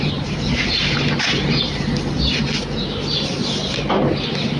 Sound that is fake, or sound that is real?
real